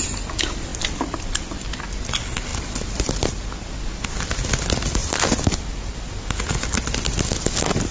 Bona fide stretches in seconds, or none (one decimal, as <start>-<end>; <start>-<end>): 0.0-0.7; 1.7-2.5; 4.3-5.0; 5.6-7.9